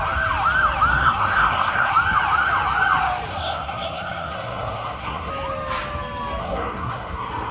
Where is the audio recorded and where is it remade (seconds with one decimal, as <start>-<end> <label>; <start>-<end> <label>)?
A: 0.0-0.9 recorded; 0.9-1.9 remade; 1.9-3.3 recorded; 3.3-5.3 remade; 5.3-6.4 recorded; 6.4-7.5 remade